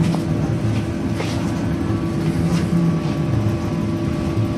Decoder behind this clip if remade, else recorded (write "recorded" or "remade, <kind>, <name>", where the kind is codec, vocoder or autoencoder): recorded